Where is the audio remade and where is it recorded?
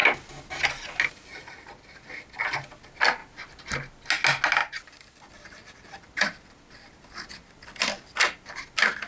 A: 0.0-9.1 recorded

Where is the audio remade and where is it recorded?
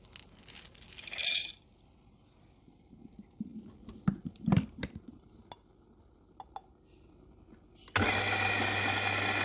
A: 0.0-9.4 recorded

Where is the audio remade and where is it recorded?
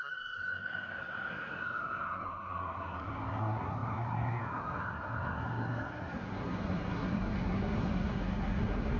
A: 0.0-9.0 remade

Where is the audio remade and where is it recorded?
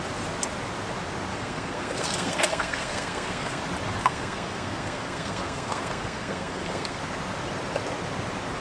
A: 0.0-1.3 recorded; 1.3-3.6 remade; 3.6-4.0 recorded; 4.0-7.0 remade; 7.0-8.6 recorded